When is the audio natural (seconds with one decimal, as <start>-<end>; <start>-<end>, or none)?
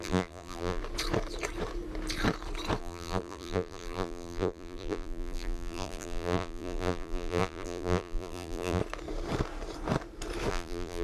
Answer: 0.8-2.8; 8.8-10.5